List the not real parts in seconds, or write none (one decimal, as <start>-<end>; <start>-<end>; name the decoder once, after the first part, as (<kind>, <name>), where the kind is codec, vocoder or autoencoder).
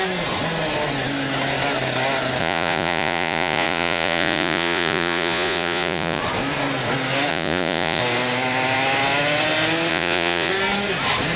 2.4-6.2 (vocoder, Vocos); 7.3-8.0; 9.9-10.5